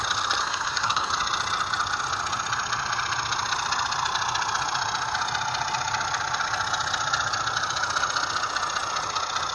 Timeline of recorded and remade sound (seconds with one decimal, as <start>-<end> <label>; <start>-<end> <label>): 0.0-0.4 recorded; 0.4-1.1 remade; 1.1-9.5 recorded